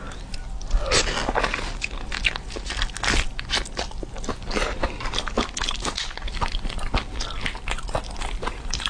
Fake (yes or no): no